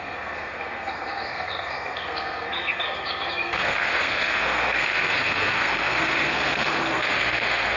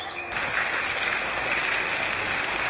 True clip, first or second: second